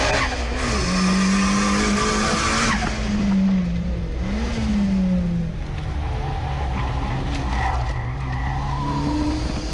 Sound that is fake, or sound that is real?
real